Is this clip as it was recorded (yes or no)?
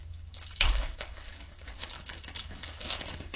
no